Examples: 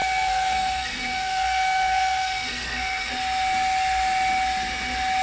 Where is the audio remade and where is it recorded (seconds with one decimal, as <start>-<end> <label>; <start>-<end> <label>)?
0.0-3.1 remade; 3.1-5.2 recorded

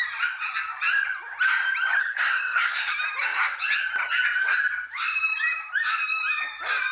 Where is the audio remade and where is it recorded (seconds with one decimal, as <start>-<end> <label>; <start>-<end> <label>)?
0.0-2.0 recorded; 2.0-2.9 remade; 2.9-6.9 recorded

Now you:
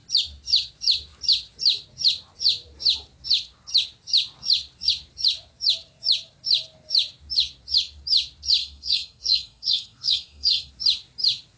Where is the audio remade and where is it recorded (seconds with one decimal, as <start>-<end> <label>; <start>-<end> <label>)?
0.0-8.6 recorded; 8.6-10.7 remade; 10.7-11.6 recorded